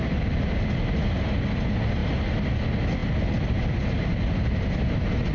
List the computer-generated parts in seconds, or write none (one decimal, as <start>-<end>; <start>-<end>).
none